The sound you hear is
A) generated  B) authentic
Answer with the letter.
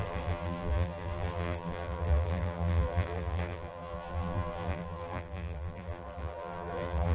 A